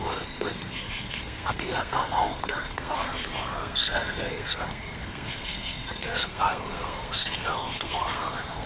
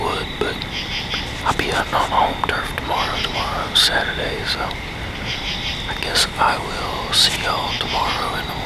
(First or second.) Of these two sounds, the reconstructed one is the first